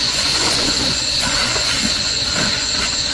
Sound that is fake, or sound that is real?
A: fake